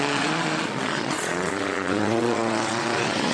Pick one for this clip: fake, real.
fake